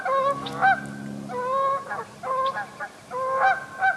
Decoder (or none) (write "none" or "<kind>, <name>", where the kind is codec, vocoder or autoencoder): none